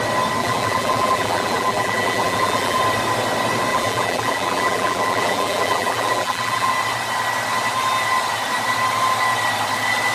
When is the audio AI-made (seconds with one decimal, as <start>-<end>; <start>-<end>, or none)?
0.4-2.8; 3.7-6.7